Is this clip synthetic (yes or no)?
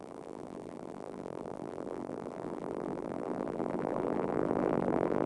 yes